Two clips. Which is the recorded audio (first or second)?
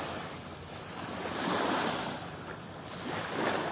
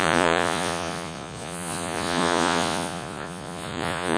first